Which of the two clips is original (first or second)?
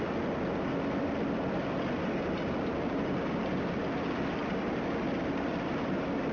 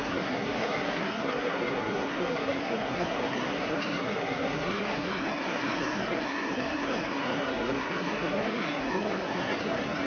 first